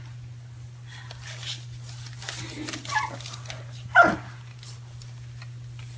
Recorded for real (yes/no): yes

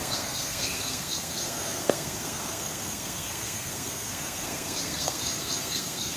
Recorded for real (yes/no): no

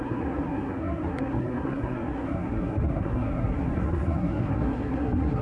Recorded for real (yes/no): no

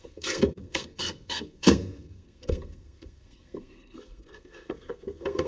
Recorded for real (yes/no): no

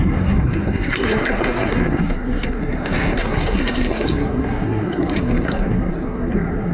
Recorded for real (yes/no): no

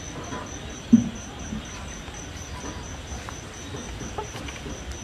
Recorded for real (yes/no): yes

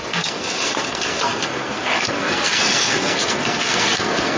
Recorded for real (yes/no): no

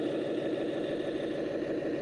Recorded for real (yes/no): yes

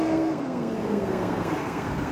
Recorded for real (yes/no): no